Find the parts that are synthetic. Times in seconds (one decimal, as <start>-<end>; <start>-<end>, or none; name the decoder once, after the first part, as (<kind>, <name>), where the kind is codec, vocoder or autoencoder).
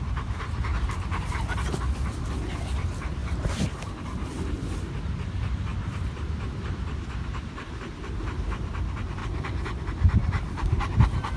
3.2-3.9 (vocoder, BigVGAN v2); 5.7-7.9; 9.2-10.9